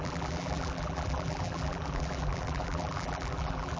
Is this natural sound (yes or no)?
no